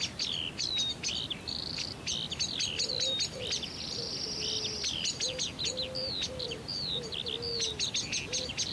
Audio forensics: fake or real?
real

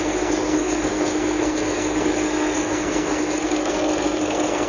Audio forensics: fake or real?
fake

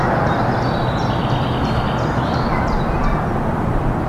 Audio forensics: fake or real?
real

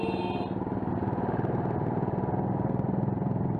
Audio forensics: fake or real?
real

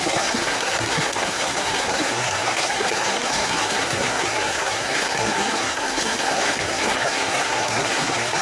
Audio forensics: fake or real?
fake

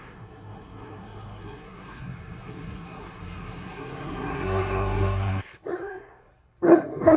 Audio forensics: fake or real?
fake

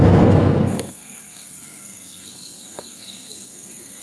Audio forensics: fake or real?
fake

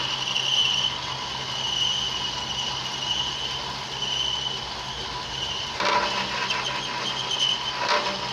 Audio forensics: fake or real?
real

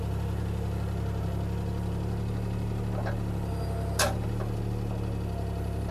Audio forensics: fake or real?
real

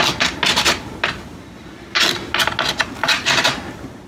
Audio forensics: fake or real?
real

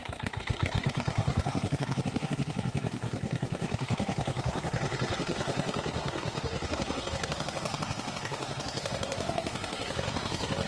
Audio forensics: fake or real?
fake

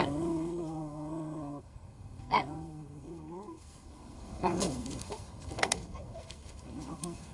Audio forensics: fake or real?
fake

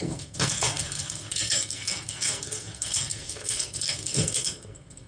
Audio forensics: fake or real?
fake